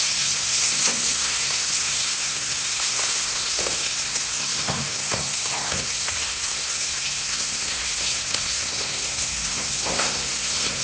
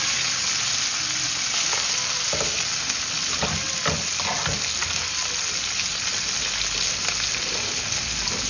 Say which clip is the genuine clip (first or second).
second